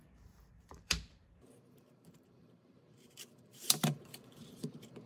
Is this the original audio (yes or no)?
no